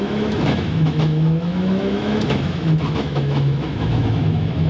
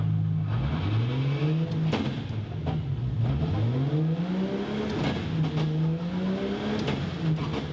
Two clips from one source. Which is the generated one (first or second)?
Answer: first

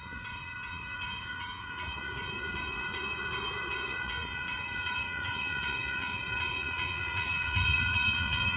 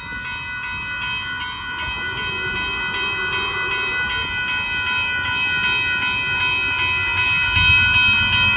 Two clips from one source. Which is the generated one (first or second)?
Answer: first